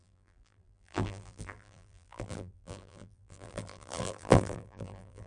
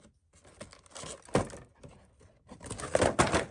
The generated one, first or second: first